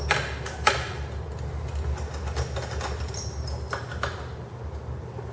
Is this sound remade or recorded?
recorded